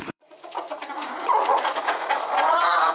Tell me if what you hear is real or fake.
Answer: fake